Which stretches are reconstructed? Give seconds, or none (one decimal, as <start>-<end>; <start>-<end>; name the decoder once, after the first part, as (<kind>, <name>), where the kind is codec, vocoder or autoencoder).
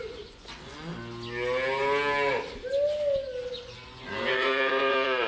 0.0-0.9 (vocoder, Vocos); 3.5-5.3